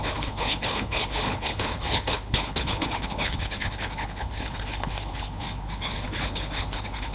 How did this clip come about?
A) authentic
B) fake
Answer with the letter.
B